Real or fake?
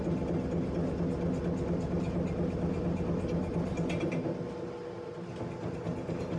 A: real